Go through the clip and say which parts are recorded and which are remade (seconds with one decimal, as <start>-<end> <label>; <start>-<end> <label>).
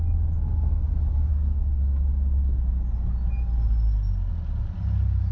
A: 0.0-1.3 recorded; 1.3-1.8 remade; 1.8-5.3 recorded